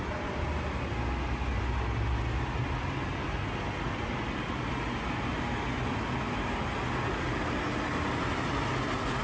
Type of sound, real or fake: real